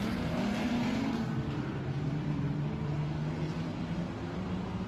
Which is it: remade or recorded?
recorded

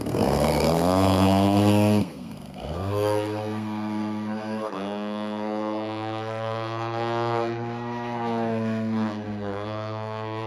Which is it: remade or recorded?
remade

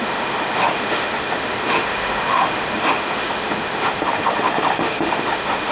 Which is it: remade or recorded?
remade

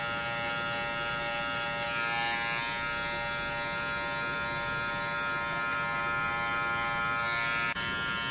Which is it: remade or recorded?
recorded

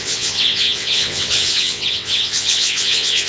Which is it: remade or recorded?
remade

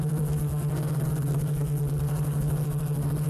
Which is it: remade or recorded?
remade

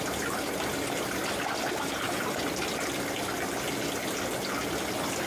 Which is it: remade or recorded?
recorded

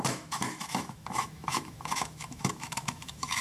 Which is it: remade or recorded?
remade